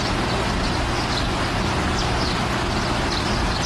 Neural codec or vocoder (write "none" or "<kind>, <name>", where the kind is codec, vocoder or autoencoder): none